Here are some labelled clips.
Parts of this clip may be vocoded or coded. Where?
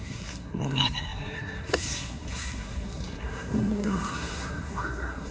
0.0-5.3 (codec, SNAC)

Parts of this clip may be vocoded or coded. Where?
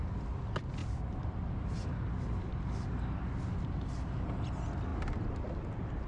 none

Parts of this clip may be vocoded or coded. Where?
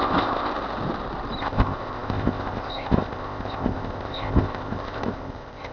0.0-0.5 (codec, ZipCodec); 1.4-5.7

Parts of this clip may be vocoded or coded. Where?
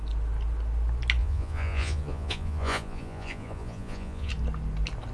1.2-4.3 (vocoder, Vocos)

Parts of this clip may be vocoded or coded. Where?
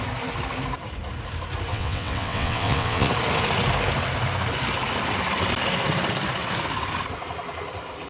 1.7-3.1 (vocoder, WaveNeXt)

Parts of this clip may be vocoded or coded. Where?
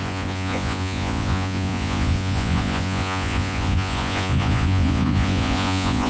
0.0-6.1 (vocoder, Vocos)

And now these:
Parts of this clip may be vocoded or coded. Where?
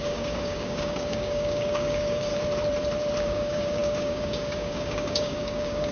0.0-2.3 (codec, DAC); 3.2-5.9